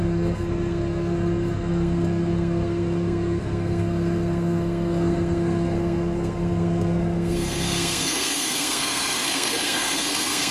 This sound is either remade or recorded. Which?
remade